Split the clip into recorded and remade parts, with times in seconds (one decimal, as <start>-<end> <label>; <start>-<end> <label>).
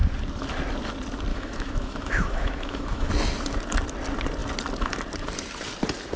0.0-1.3 recorded; 1.3-3.1 remade; 3.1-6.2 recorded